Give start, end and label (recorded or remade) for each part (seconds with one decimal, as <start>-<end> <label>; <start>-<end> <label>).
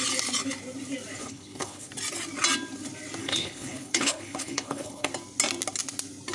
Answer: 0.0-1.2 recorded; 1.2-1.9 remade; 1.9-3.2 recorded; 3.2-5.1 remade; 5.1-6.3 recorded